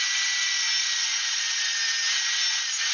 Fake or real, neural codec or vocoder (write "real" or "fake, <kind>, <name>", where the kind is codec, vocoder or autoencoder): real